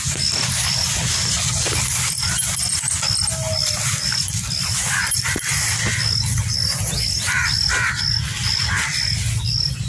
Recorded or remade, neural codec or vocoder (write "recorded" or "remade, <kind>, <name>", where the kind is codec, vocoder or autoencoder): recorded